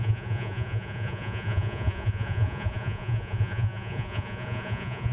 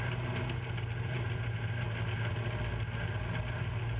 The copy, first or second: first